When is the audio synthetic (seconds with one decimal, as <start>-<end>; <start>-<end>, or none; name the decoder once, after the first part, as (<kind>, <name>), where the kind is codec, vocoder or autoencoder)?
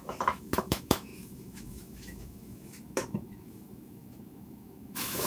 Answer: 0.0-5.3 (autoencoder, DAC-VAE)